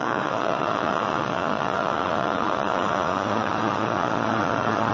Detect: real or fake fake